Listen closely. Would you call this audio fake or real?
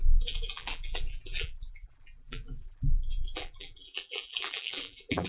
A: fake